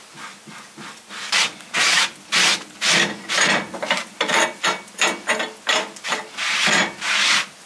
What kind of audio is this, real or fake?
real